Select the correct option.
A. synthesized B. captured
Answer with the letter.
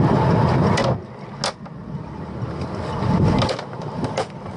B